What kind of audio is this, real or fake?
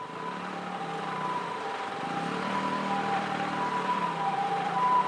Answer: fake